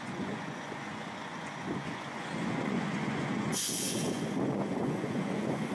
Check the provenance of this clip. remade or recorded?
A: remade